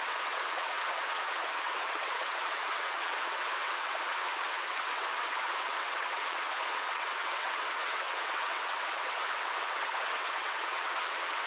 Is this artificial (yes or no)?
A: yes